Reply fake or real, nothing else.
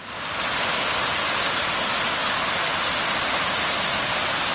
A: real